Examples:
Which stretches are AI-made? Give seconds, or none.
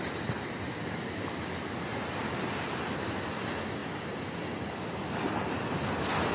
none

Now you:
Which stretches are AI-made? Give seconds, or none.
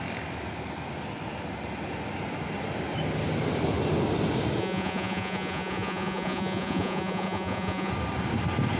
4.6-7.9 (vocoder, Vocos)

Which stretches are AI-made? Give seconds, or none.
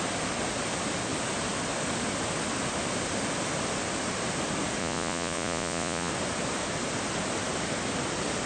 4.8-6.1 (vocoder, Vocos)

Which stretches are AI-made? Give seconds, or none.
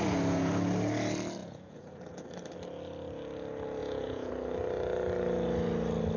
1.4-2.0 (vocoder, Vocos); 3.8-4.3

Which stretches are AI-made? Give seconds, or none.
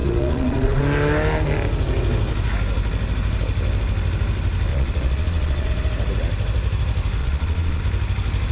0.0-0.8 (vocoder, Vocos); 4.7-5.7; 7.2-7.8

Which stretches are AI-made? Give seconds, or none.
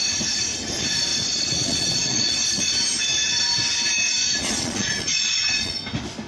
1.1-2.7 (vocoder, Vocos); 4.2-5.8